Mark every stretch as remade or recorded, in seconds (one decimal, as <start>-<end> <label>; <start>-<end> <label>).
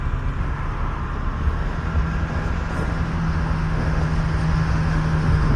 0.0-0.4 recorded; 0.4-1.0 remade; 1.0-3.1 recorded; 3.1-4.0 remade; 4.0-4.6 recorded; 4.6-5.6 remade